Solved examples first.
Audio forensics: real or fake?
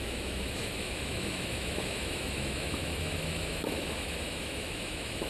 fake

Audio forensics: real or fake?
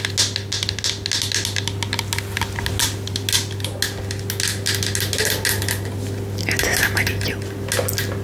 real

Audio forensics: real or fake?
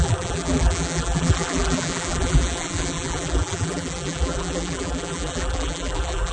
fake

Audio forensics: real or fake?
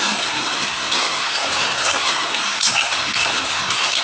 fake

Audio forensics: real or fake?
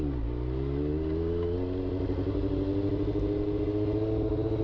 real